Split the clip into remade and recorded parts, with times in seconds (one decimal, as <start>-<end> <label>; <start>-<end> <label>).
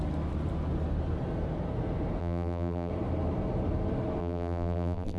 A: 0.0-2.2 recorded; 2.2-2.9 remade; 2.9-4.2 recorded; 4.2-5.2 remade